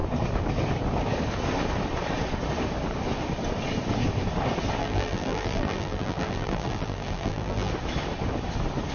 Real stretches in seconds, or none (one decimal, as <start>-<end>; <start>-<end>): 0.0-4.8; 7.7-8.9